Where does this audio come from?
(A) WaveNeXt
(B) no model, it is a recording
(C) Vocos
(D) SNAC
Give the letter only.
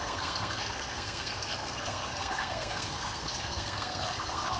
D